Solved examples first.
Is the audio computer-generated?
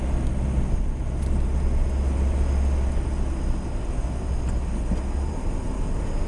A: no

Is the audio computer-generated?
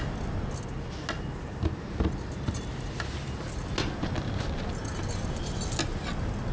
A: no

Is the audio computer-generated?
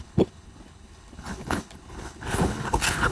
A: yes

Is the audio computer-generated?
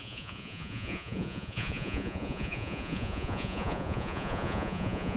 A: yes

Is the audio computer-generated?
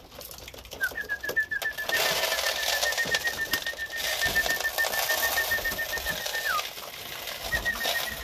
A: no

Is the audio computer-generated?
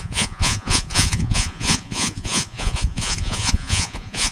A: yes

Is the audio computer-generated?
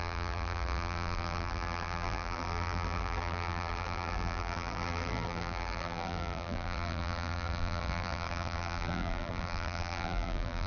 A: yes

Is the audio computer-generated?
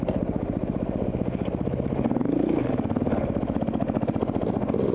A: no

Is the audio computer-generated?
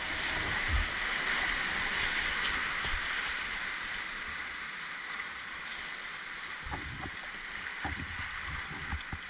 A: no